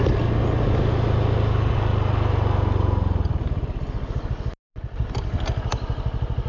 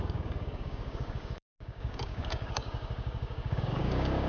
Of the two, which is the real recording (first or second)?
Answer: first